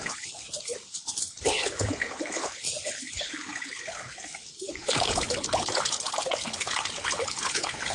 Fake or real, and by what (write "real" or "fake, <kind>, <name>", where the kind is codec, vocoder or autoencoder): fake, codec, HILCodec